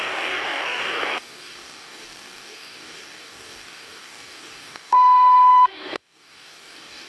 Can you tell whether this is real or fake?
fake